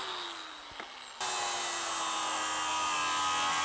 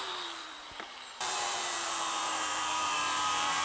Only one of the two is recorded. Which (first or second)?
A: first